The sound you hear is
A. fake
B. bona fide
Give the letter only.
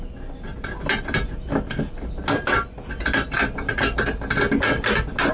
B